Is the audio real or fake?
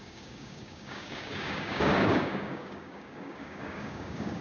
fake